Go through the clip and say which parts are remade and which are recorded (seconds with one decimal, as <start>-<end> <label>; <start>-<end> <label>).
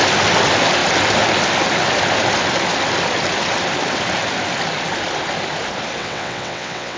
0.0-6.0 recorded; 6.0-7.0 remade